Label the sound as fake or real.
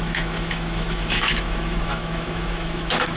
fake